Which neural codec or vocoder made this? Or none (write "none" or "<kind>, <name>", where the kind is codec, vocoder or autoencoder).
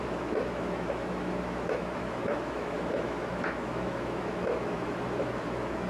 autoencoder, DAC-VAE